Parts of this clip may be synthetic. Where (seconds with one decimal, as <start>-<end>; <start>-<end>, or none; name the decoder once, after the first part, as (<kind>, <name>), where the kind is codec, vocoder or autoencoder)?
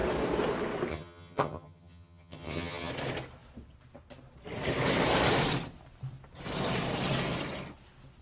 0.9-2.9 (vocoder, HiFi-GAN)